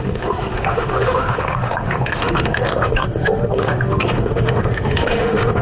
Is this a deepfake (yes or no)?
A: yes